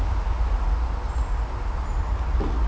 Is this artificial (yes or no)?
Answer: no